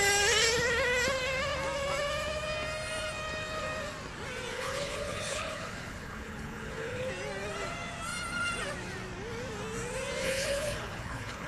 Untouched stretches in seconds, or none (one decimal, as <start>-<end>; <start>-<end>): 0.0-4.5; 7.1-10.2